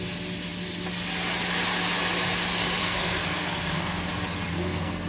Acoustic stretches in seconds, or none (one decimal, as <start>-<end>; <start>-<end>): 0.0-2.8; 4.1-4.5